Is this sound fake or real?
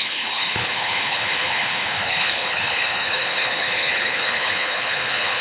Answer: fake